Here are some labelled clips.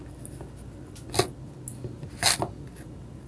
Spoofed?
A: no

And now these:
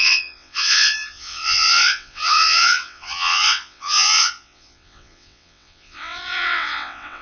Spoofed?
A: yes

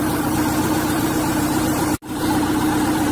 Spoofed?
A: yes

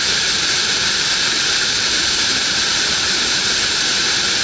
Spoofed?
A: yes